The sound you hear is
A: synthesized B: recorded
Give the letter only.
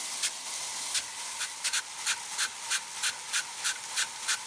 B